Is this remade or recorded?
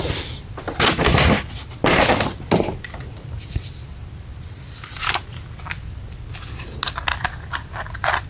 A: recorded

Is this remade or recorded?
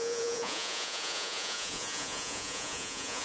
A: remade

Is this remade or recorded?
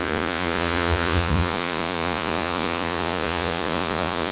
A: remade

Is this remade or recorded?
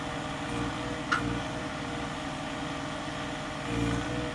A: recorded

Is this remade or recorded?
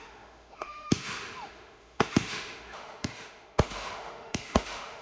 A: remade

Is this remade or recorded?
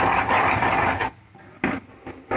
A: recorded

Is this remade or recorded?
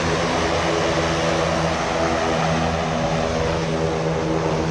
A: recorded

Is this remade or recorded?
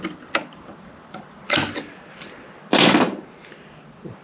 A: recorded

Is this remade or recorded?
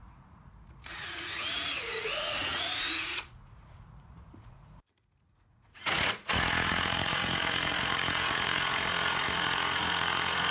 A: remade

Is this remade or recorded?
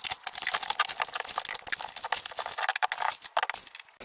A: recorded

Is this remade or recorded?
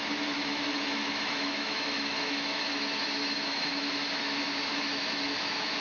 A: remade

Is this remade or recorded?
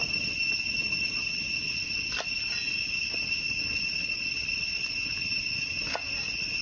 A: recorded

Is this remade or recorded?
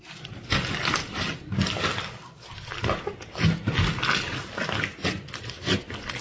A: recorded